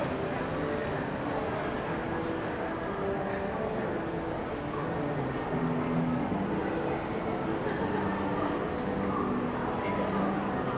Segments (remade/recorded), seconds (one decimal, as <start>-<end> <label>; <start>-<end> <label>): 0.0-10.8 recorded